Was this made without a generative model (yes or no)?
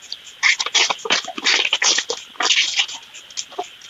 yes